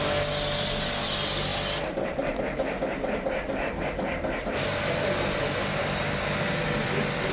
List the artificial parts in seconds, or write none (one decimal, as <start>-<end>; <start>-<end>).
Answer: none